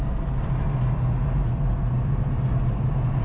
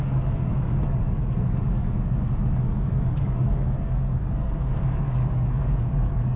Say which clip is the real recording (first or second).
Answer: first